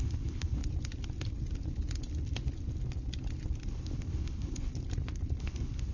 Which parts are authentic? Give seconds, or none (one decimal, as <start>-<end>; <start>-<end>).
0.6-3.7; 4.7-5.4